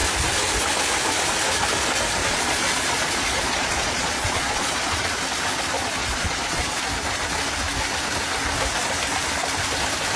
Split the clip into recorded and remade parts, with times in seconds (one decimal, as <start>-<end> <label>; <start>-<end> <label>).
0.0-2.2 recorded; 2.2-5.1 remade; 5.1-6.0 recorded; 6.0-6.8 remade; 6.8-10.2 recorded